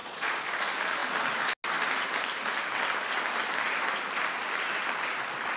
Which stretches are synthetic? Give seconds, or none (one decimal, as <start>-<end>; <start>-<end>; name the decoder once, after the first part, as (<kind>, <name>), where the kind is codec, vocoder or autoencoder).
0.0-0.6 (vocoder, Vocos)